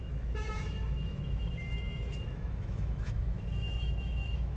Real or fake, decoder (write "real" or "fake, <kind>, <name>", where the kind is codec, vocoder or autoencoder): fake, autoencoder, DAC-VAE